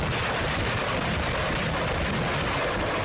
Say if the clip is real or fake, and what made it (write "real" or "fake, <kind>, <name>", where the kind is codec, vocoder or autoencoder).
real